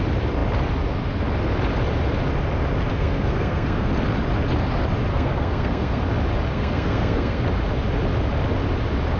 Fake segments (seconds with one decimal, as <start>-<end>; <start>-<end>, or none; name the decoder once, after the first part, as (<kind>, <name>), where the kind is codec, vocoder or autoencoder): 2.9-3.9 (codec, SNAC); 5.1-6.0; 6.5-7.4